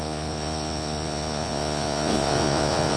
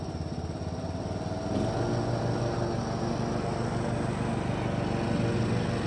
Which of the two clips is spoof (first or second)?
first